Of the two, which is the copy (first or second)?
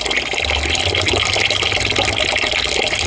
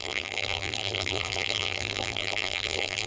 second